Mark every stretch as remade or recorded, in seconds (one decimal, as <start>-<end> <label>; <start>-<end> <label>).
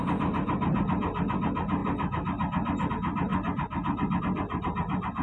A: 0.0-5.2 recorded